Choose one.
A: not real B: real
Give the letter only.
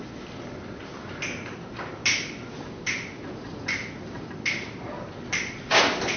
B